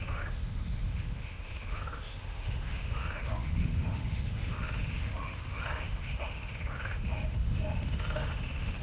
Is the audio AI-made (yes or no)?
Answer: yes